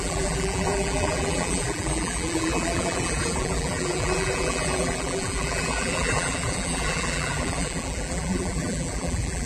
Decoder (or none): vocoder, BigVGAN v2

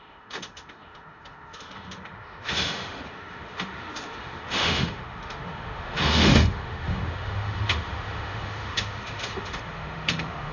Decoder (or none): autoencoder, DAC-VAE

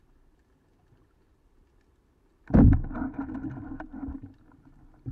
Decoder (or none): none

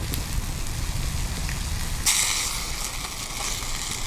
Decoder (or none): none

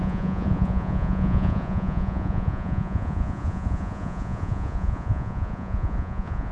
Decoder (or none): vocoder, Vocos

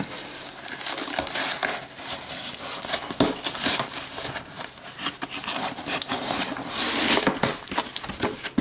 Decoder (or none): none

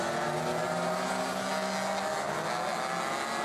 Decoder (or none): none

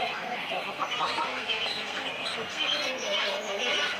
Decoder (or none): codec, SNAC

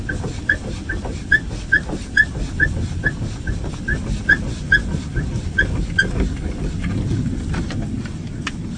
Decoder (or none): none